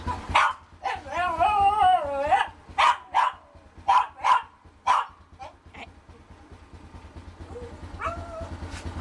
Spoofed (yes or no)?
no